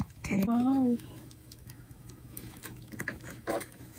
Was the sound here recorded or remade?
remade